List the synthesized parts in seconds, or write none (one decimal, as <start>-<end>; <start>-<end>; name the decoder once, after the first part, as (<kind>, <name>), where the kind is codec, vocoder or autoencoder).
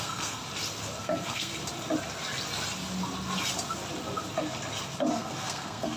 0.0-0.4 (codec, SNAC); 1.0-1.5; 5.1-6.0